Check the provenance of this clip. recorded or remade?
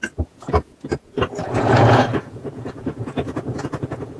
remade